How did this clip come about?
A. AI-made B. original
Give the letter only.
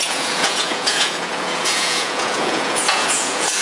A